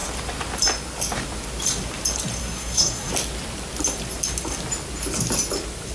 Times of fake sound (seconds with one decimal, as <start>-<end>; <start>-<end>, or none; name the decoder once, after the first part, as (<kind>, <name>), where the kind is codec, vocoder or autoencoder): 2.4-3.1 (codec, SNAC)